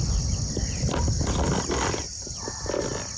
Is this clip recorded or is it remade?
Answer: recorded